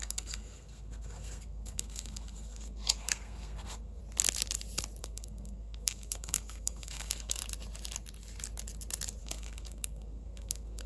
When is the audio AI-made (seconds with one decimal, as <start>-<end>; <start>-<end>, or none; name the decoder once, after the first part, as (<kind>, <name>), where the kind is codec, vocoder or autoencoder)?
0.0-4.0 (codec, SNAC); 5.0-7.4; 9.2-10.9